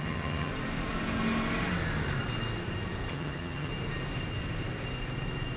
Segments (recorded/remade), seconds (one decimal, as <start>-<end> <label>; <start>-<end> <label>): 0.0-0.5 remade; 0.5-3.1 recorded; 3.1-3.7 remade; 3.7-5.6 recorded